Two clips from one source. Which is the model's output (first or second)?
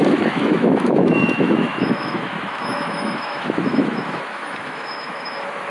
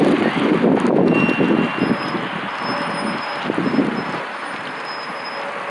first